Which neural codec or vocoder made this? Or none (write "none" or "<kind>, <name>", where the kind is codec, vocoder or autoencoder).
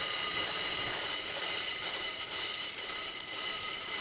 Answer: vocoder, BigVGAN v2